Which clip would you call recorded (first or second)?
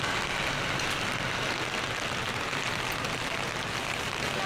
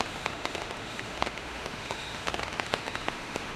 first